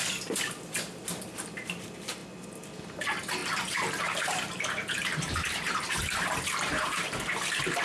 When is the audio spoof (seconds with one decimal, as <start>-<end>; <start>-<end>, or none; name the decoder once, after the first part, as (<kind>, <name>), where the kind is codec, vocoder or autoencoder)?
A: 3.4-7.8 (vocoder, BigVGAN v2)